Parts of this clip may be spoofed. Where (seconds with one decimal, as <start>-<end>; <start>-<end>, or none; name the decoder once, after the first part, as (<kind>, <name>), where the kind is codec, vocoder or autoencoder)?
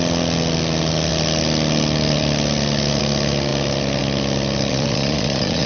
4.7-5.7 (vocoder, Vocos)